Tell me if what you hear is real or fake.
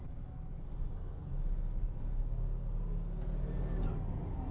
real